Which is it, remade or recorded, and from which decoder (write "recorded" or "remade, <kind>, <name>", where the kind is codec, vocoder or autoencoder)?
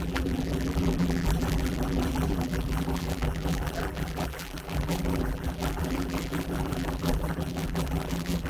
remade, vocoder, BigVGAN v2